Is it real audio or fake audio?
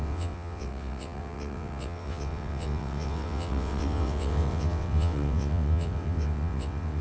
fake